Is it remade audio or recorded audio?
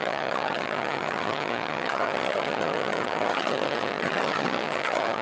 remade